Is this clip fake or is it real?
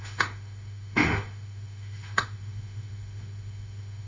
fake